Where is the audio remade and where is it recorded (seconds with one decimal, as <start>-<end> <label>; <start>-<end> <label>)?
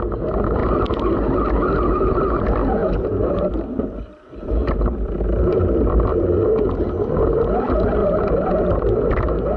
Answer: 0.0-2.8 recorded; 2.8-4.5 remade; 4.5-5.5 recorded; 5.5-6.3 remade; 6.3-8.0 recorded; 8.0-8.5 remade; 8.5-9.6 recorded